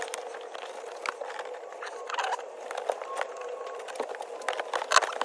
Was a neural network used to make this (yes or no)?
no